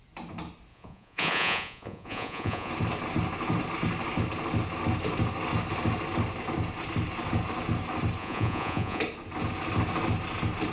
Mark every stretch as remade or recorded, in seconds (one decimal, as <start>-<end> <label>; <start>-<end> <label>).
0.0-0.7 recorded; 0.7-2.7 remade; 2.7-8.2 recorded; 8.2-9.0 remade; 9.0-10.7 recorded